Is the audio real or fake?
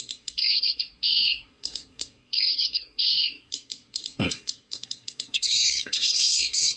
fake